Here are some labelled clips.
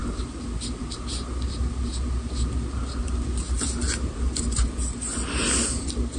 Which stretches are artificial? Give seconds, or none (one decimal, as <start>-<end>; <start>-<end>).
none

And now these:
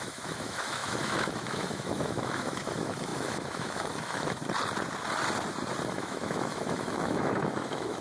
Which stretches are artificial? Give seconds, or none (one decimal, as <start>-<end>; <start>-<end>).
0.0-4.4; 5.9-8.0

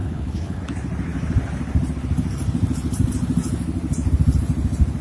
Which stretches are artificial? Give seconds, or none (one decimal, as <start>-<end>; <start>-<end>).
0.0-0.6